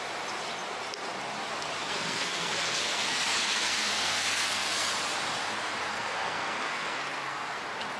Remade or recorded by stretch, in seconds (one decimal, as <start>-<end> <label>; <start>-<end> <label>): 0.0-1.8 recorded; 1.8-4.9 remade; 4.9-5.9 recorded; 5.9-7.6 remade; 7.6-8.0 recorded